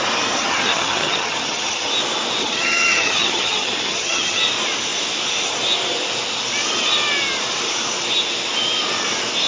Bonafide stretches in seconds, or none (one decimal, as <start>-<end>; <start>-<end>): 0.0-0.4; 1.9-2.4; 4.4-9.5